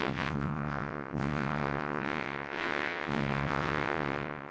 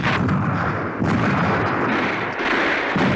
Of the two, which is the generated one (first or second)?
first